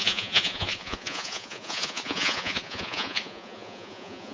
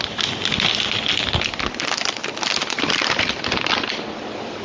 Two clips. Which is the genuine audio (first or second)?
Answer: second